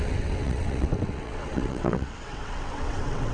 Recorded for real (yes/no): no